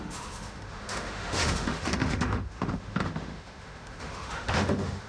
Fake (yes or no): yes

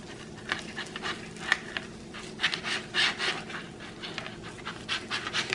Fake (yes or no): no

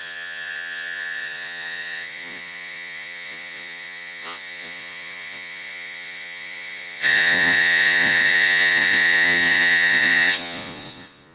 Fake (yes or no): yes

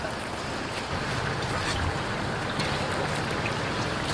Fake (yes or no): no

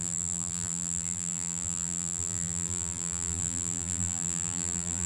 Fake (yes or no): yes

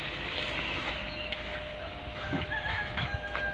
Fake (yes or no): yes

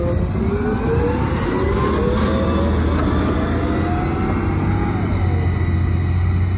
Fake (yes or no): no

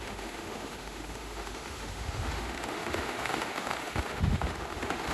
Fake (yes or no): yes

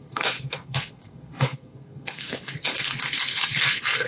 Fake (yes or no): yes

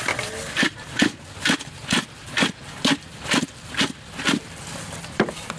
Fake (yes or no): no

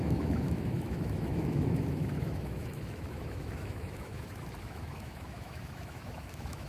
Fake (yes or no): yes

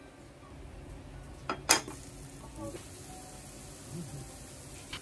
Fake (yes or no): no